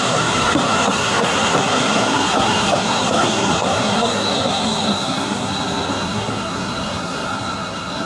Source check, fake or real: fake